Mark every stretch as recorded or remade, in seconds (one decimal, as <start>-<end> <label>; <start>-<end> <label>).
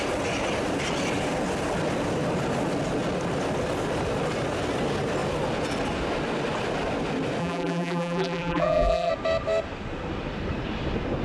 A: 0.0-7.4 recorded; 7.4-9.1 remade; 9.1-11.2 recorded